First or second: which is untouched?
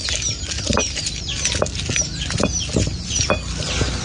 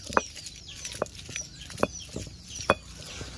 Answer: first